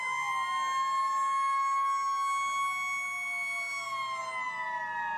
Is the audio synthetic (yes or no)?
no